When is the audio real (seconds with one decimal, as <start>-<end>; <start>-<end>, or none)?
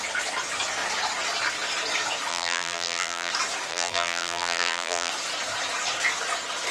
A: 0.0-2.3; 3.3-3.7; 5.1-6.7